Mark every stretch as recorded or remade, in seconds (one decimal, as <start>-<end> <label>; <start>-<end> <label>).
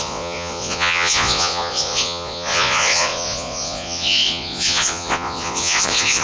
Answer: 0.0-6.2 remade